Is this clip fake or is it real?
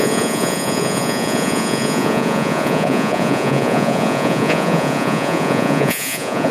fake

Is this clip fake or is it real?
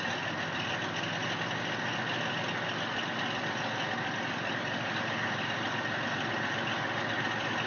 real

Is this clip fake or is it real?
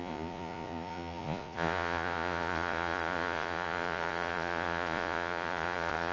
fake